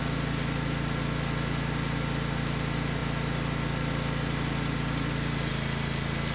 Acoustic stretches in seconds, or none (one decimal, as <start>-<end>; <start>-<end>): 0.0-6.3

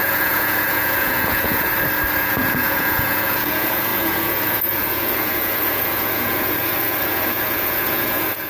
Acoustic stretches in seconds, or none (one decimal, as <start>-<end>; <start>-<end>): 1.7-2.2

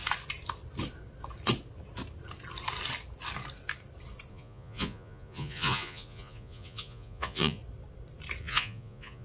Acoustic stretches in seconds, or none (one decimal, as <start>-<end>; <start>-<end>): 0.0-4.3; 7.6-8.4

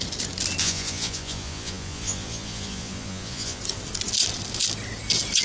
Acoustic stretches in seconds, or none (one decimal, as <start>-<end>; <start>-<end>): 0.0-0.6; 3.6-5.4